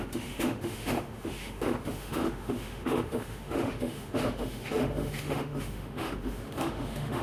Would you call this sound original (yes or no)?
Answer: no